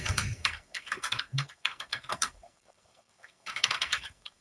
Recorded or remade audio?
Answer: remade